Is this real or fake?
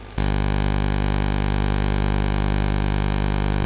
real